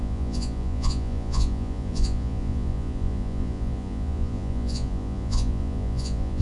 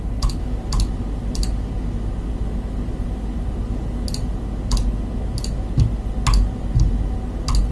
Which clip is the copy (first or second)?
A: first